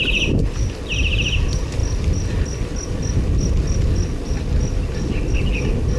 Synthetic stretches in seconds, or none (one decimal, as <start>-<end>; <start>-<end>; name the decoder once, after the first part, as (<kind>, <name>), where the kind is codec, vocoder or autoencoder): none